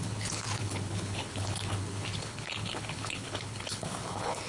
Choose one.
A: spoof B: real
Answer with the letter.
A